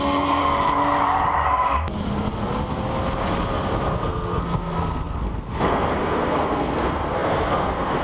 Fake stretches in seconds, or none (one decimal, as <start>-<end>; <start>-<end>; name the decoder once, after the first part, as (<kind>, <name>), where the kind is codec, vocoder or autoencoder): 0.0-0.4 (codec, SNAC); 4.0-8.0